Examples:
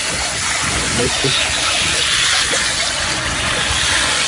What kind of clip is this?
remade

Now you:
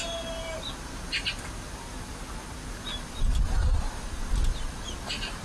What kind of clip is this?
recorded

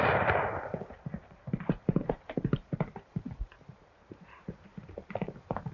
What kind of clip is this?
remade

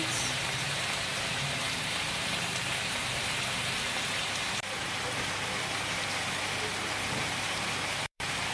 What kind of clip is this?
remade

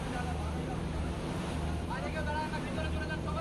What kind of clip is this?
recorded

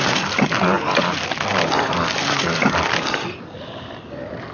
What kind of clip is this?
recorded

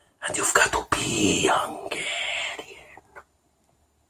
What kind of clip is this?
recorded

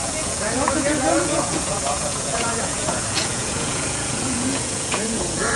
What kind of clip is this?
remade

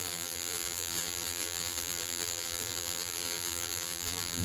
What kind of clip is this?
remade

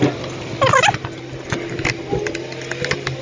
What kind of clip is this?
recorded